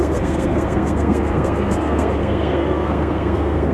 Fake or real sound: fake